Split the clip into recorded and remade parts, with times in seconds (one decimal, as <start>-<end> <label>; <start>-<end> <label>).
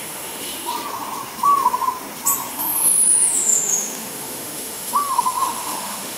0.0-0.7 remade; 0.7-2.5 recorded; 2.5-6.2 remade